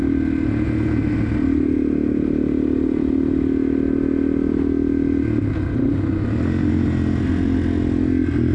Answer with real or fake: real